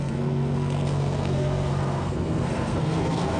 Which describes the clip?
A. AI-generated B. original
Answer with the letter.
A